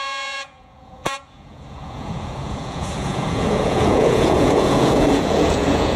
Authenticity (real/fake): fake